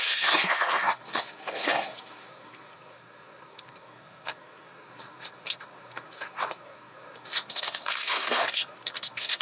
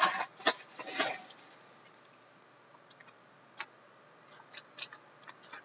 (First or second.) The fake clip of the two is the first